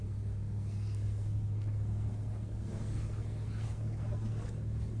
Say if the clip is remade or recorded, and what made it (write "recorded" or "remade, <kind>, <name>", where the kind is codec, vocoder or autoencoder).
remade, codec, SNAC